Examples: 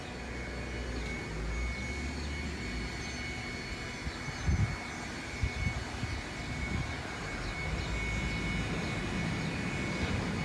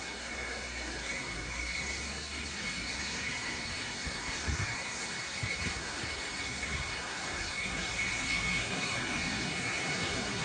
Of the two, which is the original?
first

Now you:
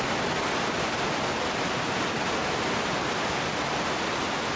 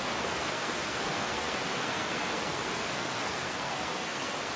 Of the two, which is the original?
first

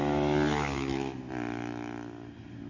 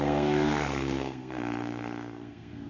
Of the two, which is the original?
first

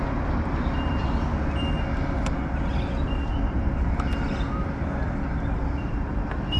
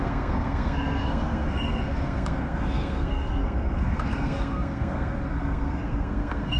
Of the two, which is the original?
first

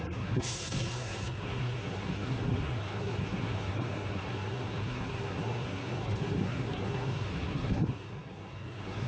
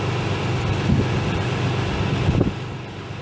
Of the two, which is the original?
second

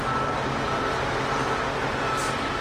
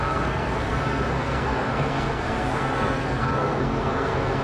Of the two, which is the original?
first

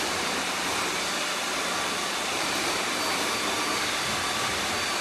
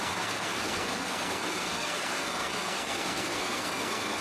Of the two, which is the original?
first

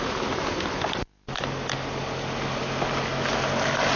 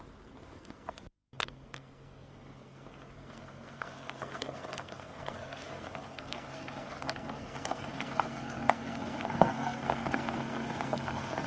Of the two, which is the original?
first